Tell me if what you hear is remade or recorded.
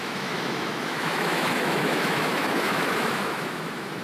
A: remade